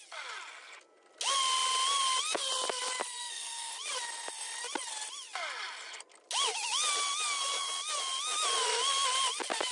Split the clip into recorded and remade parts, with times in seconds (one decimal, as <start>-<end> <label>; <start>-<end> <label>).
0.0-3.1 recorded; 3.1-3.7 remade; 3.7-9.7 recorded